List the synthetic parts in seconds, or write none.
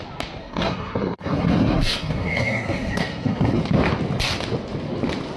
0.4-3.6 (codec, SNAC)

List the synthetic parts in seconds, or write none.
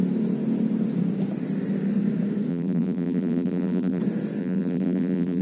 2.5-4.0 (vocoder, BigVGAN v2); 4.4-5.4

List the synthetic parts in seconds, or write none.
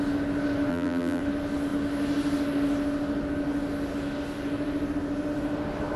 0.7-1.2 (vocoder, BigVGAN v2)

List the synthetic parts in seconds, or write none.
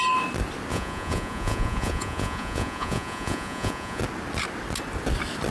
0.7-4.0 (vocoder, Vocos)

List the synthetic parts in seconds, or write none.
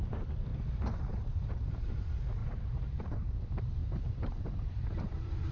0.0-0.5 (vocoder, BigVGAN v2); 1.2-5.5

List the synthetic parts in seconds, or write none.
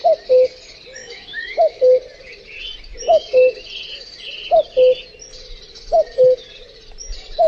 1.0-1.8 (autoencoder, DAC-VAE)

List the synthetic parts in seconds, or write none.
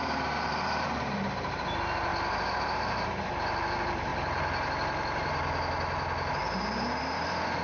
0.0-2.1 (vocoder, BigVGAN v2); 2.6-4.1; 6.3-7.6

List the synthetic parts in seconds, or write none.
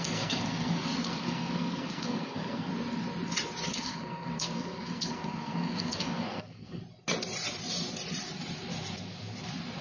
0.0-2.7 (codec, SNAC); 3.7-6.8